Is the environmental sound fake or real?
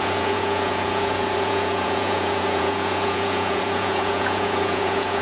fake